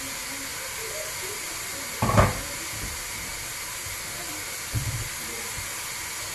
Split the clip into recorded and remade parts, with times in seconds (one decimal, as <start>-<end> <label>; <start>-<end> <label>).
0.0-0.5 recorded; 0.5-2.1 remade; 2.1-6.3 recorded